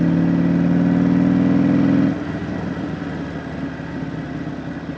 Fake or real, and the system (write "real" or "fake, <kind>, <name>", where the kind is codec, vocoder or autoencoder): real